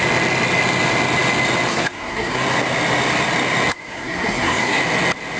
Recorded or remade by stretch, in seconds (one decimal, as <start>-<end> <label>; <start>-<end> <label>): 0.0-1.7 recorded; 1.7-2.4 remade; 2.4-3.7 recorded; 3.7-4.8 remade; 4.8-5.4 recorded